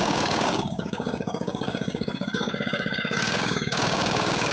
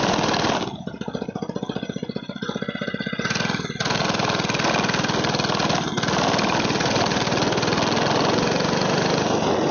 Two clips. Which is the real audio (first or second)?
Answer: second